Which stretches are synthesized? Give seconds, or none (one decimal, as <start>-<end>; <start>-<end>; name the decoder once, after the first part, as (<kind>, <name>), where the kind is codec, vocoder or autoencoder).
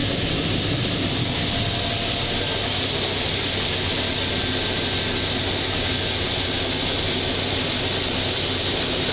none